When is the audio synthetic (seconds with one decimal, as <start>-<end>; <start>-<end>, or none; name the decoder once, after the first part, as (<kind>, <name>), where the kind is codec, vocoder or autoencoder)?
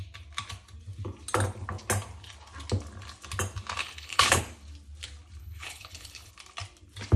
3.8-4.4 (codec, HILCodec); 5.4-6.3